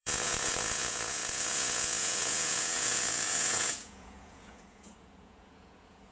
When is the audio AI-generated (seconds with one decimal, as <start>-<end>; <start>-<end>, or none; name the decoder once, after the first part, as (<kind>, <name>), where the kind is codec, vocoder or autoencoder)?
0.0-6.1 (vocoder, Vocos)